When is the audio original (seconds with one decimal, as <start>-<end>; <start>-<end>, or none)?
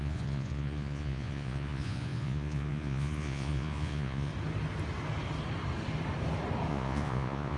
4.3-6.7